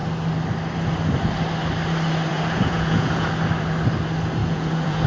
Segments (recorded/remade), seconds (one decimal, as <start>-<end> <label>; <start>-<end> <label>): 0.0-2.3 recorded; 2.3-3.3 remade; 3.3-4.4 recorded; 4.4-5.1 remade